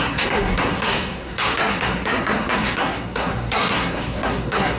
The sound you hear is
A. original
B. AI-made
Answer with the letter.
B